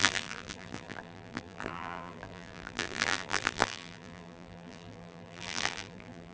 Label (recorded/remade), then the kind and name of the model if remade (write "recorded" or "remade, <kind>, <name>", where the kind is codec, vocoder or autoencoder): remade, vocoder, BigVGAN v2